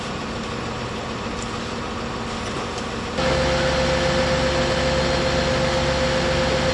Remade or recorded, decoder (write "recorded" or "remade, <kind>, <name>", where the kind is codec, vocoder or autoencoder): recorded